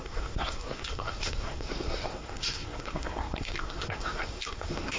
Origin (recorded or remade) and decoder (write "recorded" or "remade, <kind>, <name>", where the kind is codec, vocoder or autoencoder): remade, codec, SNAC